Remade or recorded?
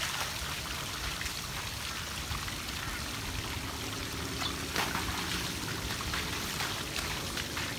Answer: recorded